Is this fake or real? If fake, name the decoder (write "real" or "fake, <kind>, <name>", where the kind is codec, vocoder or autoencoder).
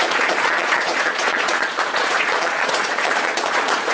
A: fake, vocoder, Vocos